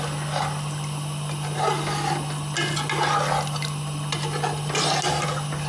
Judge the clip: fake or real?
real